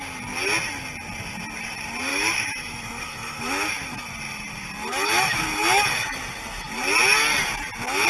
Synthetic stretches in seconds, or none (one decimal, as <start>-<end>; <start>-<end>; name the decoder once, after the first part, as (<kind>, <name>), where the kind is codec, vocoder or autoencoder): 2.1-3.5 (autoencoder, DAC-VAE); 4.9-6.8